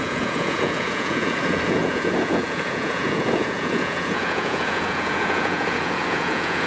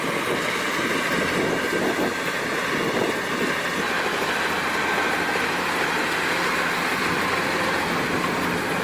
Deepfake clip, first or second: first